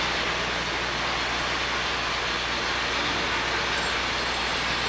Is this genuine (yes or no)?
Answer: yes